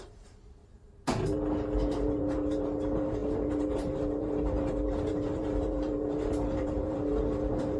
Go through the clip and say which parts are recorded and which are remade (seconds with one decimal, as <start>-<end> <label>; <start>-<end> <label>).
0.0-0.6 remade; 0.6-1.8 recorded; 1.8-7.8 remade

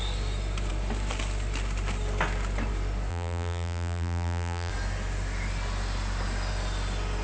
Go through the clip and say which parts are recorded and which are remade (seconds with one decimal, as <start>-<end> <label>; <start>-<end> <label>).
0.0-3.1 recorded; 3.1-4.7 remade; 4.7-7.2 recorded

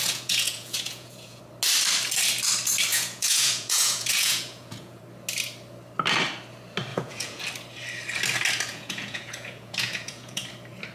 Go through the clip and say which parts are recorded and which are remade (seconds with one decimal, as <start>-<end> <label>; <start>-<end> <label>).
0.0-1.4 remade; 1.4-2.9 recorded; 2.9-5.0 remade; 5.0-6.9 recorded; 6.9-7.4 remade; 7.4-8.7 recorded; 8.7-10.4 remade; 10.4-10.9 recorded